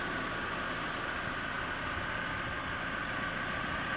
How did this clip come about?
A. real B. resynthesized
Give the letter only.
A